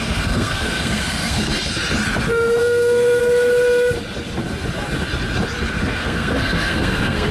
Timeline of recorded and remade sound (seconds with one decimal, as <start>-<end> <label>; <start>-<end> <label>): 0.0-1.5 remade; 1.5-2.6 recorded; 2.6-3.2 remade; 3.2-5.7 recorded; 5.7-7.3 remade